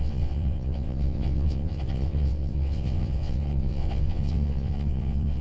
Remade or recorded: remade